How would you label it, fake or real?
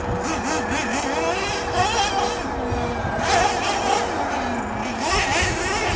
real